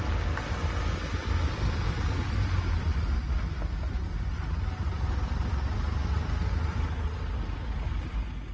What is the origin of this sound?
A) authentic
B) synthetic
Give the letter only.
A